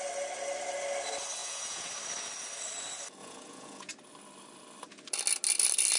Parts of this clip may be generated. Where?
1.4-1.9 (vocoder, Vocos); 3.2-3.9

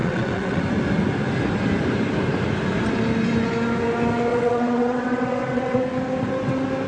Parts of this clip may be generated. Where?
0.0-0.6 (vocoder, WaveNeXt); 4.3-5.8

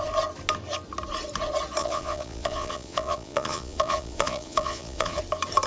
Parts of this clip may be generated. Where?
1.8-5.2 (vocoder, Vocos)

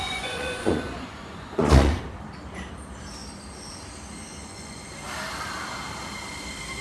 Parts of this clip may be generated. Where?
0.0-2.0 (vocoder, Vocos); 4.3-4.9

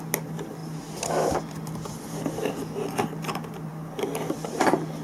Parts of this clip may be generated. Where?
none

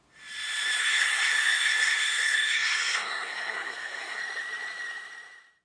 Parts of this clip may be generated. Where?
0.8-4.2 (codec, SNAC)